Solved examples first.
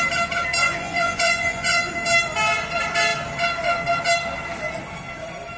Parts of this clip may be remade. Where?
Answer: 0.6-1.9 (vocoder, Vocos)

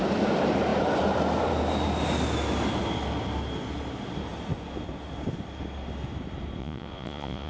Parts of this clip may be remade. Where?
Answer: 6.6-7.5 (vocoder, Vocos)